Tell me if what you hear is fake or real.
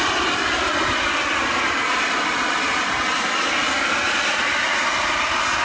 real